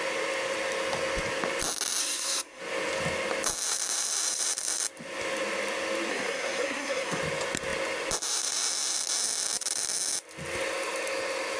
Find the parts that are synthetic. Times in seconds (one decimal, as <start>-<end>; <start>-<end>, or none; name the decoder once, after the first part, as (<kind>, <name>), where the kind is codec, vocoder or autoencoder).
2.0-2.6 (codec, SNAC); 6.1-7.2